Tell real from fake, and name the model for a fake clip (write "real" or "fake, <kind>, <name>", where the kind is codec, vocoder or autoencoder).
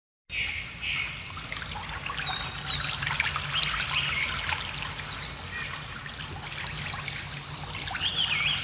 real